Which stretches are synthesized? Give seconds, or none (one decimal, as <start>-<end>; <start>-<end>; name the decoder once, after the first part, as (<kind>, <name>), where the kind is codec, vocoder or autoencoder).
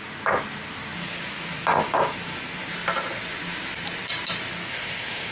4.7-5.3 (codec, ZipCodec)